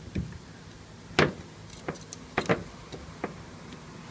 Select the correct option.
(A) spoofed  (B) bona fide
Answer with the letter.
B